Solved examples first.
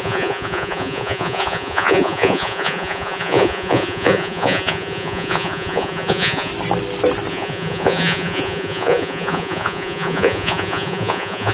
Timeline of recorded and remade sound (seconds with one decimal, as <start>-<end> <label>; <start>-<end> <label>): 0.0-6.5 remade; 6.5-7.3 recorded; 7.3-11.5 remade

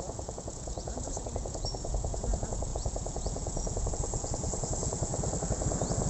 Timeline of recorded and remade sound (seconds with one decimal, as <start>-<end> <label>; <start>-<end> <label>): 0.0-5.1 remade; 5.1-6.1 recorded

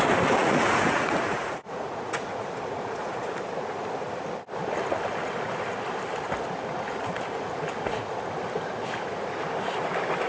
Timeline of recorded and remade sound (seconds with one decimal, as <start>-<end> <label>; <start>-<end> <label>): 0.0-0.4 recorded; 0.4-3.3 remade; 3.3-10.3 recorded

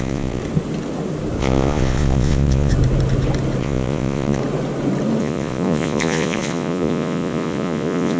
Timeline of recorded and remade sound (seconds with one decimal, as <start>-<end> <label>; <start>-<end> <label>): 0.0-0.4 remade; 0.4-1.4 recorded; 1.4-2.7 remade; 2.7-3.6 recorded; 3.6-4.4 remade; 4.4-5.2 recorded; 5.2-8.2 remade